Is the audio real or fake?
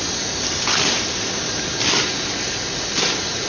real